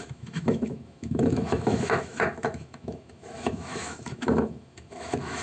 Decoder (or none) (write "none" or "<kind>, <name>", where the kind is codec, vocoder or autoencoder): autoencoder, DAC-VAE